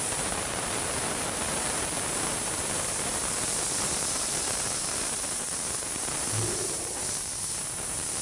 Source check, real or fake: fake